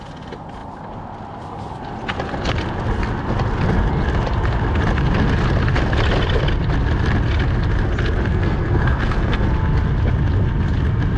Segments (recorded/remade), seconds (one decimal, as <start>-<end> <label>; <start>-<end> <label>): 0.0-8.3 recorded; 8.3-9.5 remade; 9.5-11.2 recorded